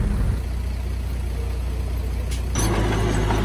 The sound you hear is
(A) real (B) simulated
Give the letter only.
A